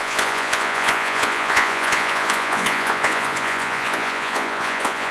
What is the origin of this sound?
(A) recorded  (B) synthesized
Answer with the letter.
B